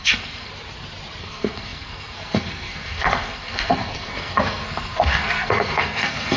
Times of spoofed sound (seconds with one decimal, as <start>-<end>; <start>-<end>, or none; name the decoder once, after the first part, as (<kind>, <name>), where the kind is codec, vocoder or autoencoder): 0.0-0.5 (codec, SNAC); 1.2-6.4